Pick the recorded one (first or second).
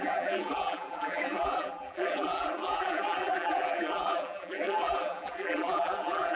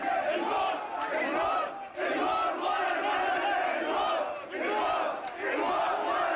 second